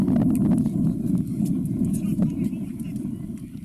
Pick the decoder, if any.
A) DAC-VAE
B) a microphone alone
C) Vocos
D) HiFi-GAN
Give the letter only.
B